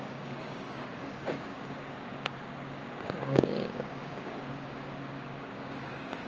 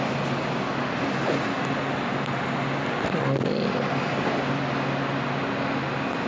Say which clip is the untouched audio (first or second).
second